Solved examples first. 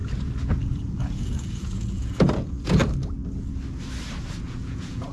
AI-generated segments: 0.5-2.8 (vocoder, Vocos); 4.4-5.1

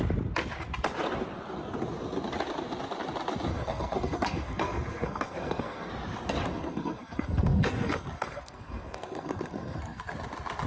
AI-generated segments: 3.5-5.9 (codec, SNAC); 6.5-10.1

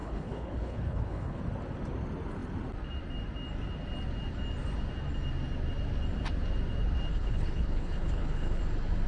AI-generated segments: 0.0-1.4 (codec, HILCodec); 7.1-8.6

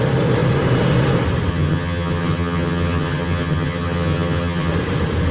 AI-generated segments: 1.5-4.7 (vocoder, HiFi-GAN)

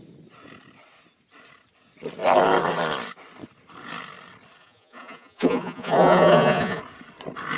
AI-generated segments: 4.6-6.8 (vocoder, Vocos)

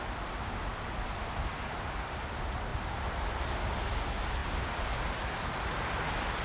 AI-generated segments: 2.7-3.9 (vocoder, BigVGAN v2); 4.4-5.2